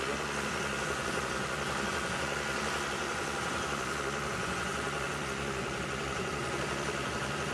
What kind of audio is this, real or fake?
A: fake